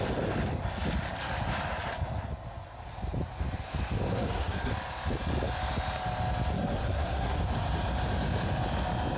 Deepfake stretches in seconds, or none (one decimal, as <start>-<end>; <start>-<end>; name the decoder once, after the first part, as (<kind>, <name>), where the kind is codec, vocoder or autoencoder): 4.1-4.7 (codec, SNAC); 6.5-7.4